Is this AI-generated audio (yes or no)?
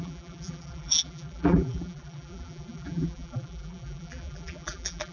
yes